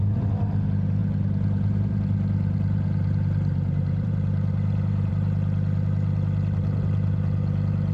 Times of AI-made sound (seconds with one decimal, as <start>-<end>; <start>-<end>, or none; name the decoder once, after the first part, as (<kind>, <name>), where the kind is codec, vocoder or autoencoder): 1.0-5.1 (vocoder, BigVGAN v2)